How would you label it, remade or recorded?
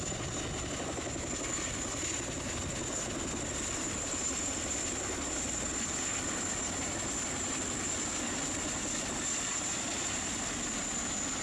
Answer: recorded